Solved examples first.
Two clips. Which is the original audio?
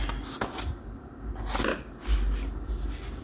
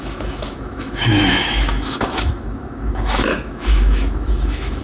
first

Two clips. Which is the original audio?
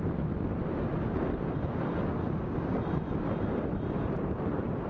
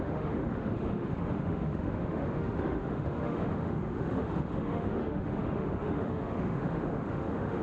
first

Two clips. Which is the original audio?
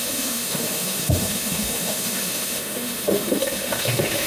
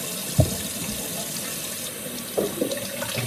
second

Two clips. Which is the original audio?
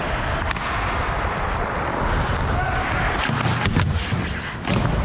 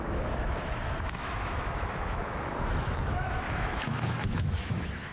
first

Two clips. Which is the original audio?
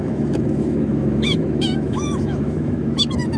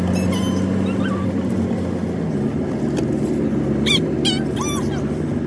second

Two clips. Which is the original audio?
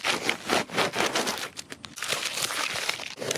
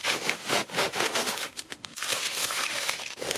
first